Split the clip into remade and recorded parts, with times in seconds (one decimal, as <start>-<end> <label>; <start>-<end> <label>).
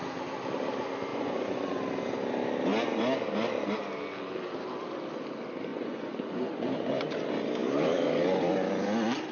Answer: 0.0-1.1 recorded; 1.1-1.8 remade; 1.8-5.7 recorded; 5.7-7.1 remade; 7.1-9.3 recorded